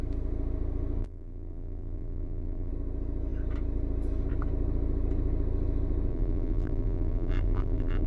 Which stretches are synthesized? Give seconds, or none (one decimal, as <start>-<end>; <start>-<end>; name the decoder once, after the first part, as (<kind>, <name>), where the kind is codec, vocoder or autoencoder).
1.0-2.7 (vocoder, BigVGAN v2); 6.1-8.1